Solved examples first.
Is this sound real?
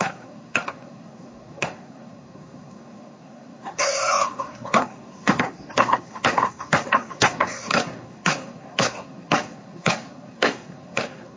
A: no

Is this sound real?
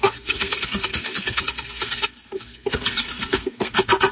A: no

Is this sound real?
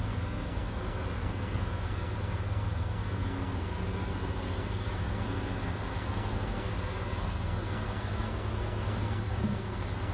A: no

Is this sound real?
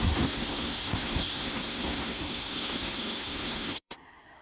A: no